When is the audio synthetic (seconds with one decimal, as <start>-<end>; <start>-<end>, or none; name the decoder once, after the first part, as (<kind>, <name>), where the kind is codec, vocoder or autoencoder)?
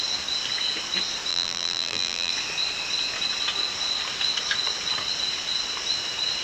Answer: 1.3-2.3 (vocoder, BigVGAN v2)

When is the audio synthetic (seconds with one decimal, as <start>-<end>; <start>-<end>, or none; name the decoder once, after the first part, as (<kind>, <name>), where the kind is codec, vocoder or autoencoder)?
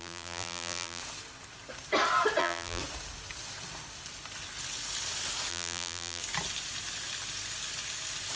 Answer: 0.0-1.0 (vocoder, BigVGAN v2); 2.4-2.8; 5.5-6.2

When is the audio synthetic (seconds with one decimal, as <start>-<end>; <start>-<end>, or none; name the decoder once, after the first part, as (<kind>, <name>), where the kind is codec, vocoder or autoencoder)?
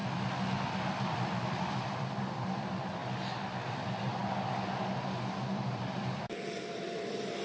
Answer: 0.9-3.0 (vocoder, BigVGAN v2); 3.5-4.2; 5.5-7.4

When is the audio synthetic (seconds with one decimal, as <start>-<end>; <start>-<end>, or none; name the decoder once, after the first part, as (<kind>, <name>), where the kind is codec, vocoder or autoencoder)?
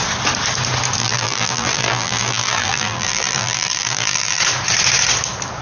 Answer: 1.0-4.4 (vocoder, BigVGAN v2)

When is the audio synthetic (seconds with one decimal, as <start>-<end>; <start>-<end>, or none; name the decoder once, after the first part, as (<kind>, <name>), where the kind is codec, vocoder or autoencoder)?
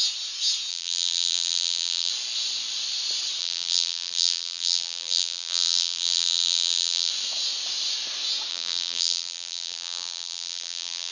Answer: 0.7-2.1 (vocoder, BigVGAN v2); 3.4-7.1; 8.5-11.1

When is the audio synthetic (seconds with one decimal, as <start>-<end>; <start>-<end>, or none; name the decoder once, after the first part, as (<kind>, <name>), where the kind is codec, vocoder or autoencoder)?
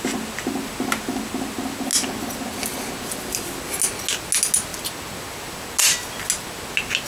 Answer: none